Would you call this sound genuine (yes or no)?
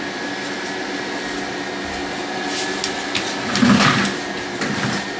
yes